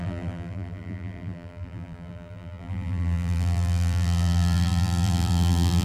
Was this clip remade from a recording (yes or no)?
yes